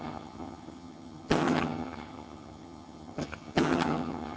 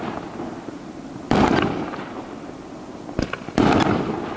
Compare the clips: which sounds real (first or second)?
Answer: second